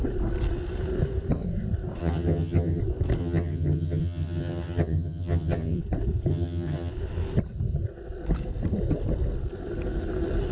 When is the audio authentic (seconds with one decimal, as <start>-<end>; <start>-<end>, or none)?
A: 0.0-2.0; 2.8-3.2; 5.8-6.3; 6.9-10.5